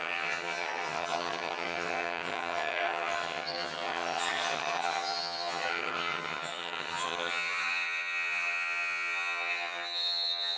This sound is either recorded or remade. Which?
remade